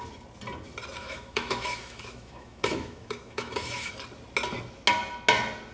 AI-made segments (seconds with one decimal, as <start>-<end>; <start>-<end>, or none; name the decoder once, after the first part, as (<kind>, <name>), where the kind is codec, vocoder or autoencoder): 1.0-3.9 (autoencoder, DAC-VAE)